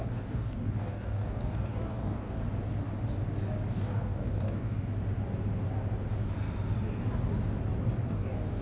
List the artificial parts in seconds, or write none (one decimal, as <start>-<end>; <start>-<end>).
0.0-2.4; 3.7-4.9; 8.1-8.6

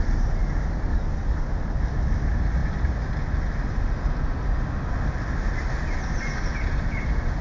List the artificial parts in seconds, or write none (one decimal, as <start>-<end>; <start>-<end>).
0.9-1.5

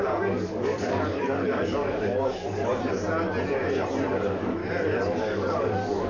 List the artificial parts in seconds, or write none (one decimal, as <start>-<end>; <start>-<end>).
0.0-2.7; 4.1-4.6; 5.2-6.1

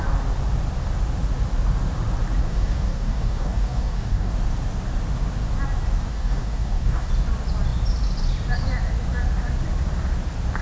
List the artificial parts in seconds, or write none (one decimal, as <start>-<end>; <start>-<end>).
2.4-4.3; 6.1-7.1

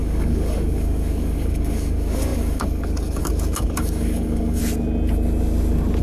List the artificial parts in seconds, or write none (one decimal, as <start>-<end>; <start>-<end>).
0.0-4.6

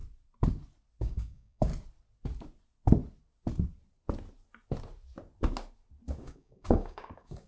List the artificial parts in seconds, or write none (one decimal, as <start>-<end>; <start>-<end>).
1.0-1.7; 6.2-7.5